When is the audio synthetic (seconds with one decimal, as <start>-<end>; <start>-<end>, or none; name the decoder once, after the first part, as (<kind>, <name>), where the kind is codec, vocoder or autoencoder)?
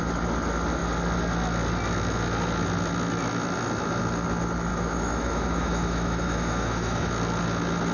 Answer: 4.7-7.1 (autoencoder, DAC-VAE)